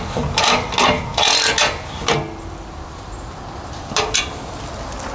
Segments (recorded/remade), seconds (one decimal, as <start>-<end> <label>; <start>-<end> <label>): 0.0-5.1 recorded